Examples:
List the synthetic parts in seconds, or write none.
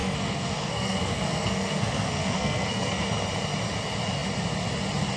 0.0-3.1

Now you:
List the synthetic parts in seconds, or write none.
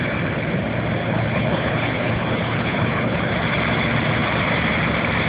1.0-3.3